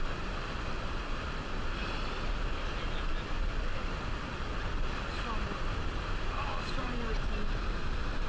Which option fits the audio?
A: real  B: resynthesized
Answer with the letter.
A